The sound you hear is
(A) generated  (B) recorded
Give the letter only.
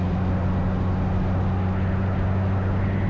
B